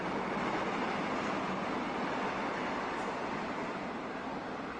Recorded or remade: recorded